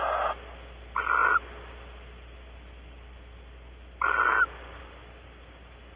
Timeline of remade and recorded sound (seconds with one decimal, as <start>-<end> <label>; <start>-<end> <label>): 0.0-6.0 recorded